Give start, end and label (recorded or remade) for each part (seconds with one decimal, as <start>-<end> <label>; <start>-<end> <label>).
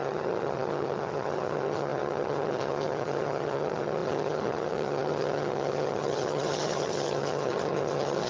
0.0-8.3 remade